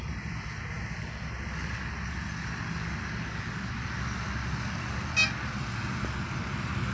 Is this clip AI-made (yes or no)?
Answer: no